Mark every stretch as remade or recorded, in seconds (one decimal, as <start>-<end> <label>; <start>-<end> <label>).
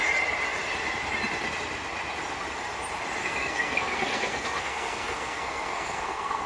0.0-3.2 recorded; 3.2-6.5 remade